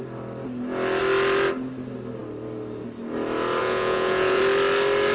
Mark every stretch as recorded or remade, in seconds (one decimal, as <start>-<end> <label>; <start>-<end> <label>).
0.0-3.6 recorded; 3.6-4.4 remade; 4.4-5.1 recorded